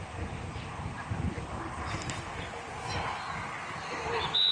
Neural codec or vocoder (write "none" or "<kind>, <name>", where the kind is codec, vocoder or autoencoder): none